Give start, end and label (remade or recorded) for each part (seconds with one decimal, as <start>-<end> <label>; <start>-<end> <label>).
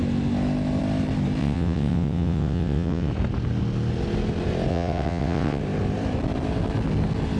0.0-1.4 recorded; 1.4-3.1 remade; 3.1-4.7 recorded; 4.7-5.6 remade; 5.6-7.4 recorded